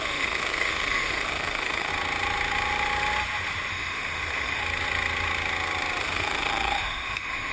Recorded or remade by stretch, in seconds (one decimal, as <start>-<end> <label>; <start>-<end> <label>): 0.0-1.9 remade; 1.9-3.7 recorded; 3.7-4.6 remade; 4.6-6.0 recorded; 6.0-7.5 remade